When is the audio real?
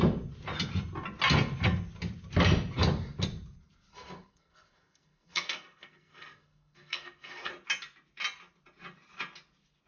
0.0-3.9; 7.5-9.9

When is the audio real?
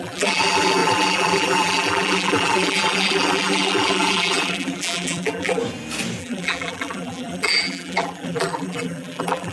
5.6-6.2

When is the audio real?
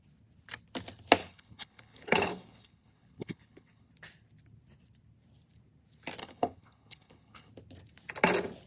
0.0-1.2; 3.9-6.2; 7.5-8.7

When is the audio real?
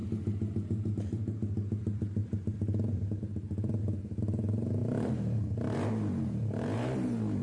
none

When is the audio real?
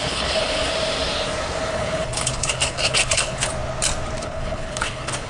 0.7-1.7; 3.5-4.2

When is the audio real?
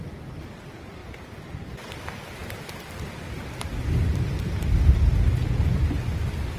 0.0-6.6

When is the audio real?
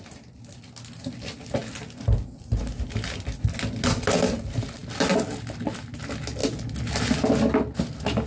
0.0-8.3